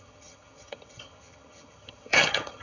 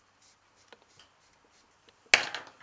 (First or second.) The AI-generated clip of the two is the first